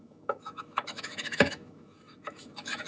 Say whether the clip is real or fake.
fake